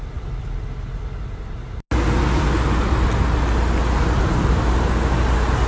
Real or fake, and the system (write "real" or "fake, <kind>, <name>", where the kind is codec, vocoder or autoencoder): real